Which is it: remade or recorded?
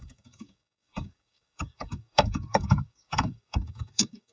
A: remade